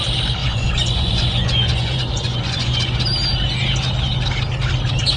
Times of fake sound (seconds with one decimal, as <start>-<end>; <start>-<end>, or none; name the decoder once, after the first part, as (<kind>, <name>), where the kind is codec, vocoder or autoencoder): 0.4-3.0 (vocoder, Vocos)

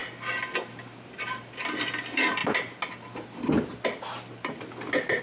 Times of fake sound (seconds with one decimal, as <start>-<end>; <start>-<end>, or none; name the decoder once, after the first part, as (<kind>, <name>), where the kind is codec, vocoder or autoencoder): none

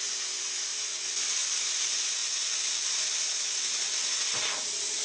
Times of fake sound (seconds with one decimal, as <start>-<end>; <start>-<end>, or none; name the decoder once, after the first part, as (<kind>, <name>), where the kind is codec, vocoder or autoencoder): none